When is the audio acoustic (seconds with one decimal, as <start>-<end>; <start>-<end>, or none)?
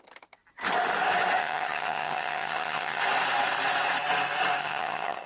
0.0-1.4; 3.0-4.6